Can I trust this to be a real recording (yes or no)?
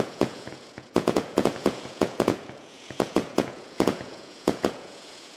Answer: no